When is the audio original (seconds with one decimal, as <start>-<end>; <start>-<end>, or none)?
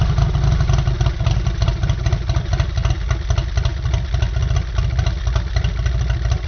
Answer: 0.0-6.5